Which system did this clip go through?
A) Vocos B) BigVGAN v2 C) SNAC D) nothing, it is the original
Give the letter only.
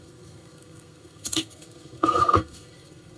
C